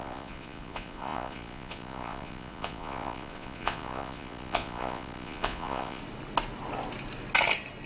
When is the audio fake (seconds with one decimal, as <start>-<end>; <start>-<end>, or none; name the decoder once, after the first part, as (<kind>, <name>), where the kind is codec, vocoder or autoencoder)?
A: 0.0-6.0 (vocoder, Vocos)